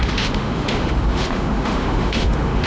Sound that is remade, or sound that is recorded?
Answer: remade